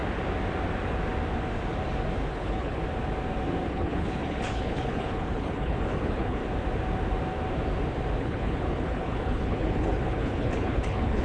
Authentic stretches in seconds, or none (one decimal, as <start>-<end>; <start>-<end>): 0.0-2.3; 2.8-3.7; 6.4-8.2